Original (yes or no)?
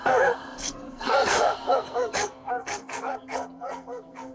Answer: no